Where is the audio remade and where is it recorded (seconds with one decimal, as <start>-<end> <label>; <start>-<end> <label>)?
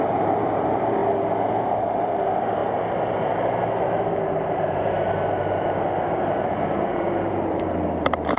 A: 0.0-1.0 remade; 1.0-1.5 recorded; 1.5-8.4 remade